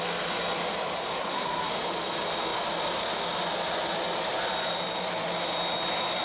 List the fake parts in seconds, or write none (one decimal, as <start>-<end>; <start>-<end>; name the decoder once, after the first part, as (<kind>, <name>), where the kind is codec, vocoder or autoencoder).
1.1-1.7 (codec, SNAC)